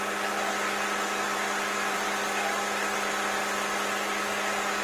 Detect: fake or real real